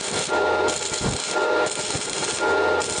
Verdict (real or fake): real